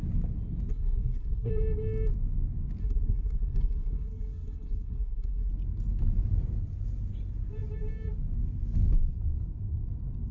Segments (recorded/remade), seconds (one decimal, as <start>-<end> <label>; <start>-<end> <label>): 0.0-0.7 recorded; 0.7-1.5 remade; 1.5-2.8 recorded; 2.8-5.5 remade; 5.5-10.3 recorded